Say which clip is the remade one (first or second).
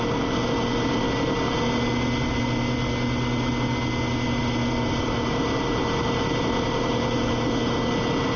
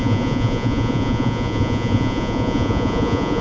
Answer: second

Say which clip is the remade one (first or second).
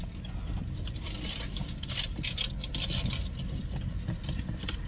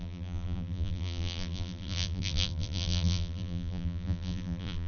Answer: second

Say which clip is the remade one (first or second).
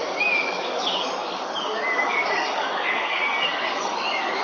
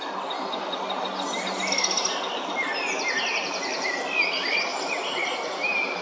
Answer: first